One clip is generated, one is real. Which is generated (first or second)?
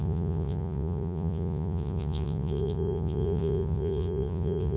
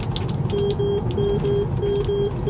first